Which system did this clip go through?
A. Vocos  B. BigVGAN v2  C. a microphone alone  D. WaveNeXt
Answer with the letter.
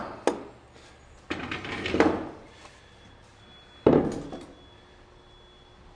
C